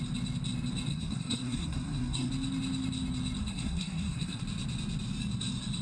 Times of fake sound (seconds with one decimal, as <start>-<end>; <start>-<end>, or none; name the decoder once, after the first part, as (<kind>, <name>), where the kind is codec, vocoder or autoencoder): 0.9-2.3 (codec, SNAC); 3.4-4.4